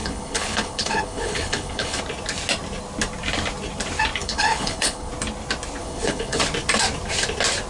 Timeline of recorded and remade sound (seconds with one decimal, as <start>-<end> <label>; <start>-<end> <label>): 0.0-2.0 remade; 2.0-4.2 recorded; 4.2-5.1 remade; 5.1-5.8 recorded; 5.8-6.4 remade; 6.4-7.7 recorded